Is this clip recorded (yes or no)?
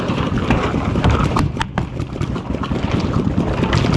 yes